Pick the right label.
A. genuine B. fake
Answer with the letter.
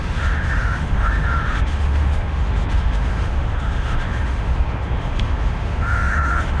B